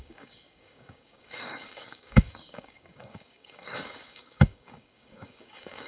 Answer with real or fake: fake